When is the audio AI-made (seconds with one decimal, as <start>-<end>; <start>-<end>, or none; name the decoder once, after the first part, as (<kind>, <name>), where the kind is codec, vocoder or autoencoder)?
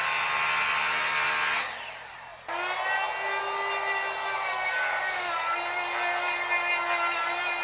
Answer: 4.2-5.3 (codec, DAC)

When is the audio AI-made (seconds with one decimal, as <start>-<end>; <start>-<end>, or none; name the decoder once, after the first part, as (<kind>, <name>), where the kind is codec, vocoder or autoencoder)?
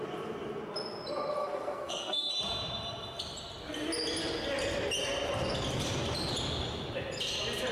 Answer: 1.4-2.3 (codec, SNAC)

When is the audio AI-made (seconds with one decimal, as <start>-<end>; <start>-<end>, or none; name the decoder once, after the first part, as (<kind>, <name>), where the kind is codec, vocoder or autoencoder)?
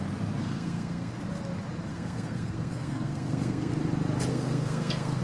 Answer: 0.4-1.1 (codec, SNAC); 1.9-3.7; 4.3-5.2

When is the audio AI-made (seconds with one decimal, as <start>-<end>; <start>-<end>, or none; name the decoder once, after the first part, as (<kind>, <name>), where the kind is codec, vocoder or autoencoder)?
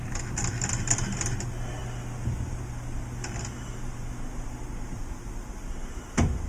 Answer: none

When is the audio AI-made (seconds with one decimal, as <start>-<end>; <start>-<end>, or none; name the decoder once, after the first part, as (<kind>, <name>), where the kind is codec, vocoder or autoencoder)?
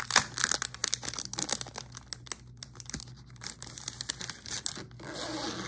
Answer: none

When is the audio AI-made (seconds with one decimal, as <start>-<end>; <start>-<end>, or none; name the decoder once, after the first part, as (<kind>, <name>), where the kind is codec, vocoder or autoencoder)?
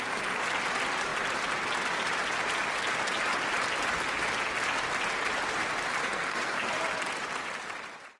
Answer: 6.0-6.7 (codec, SNAC)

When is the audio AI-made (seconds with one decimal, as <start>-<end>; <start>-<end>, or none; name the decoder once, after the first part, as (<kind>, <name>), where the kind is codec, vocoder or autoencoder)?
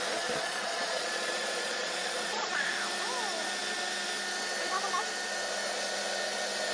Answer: 0.4-2.7 (vocoder, Vocos)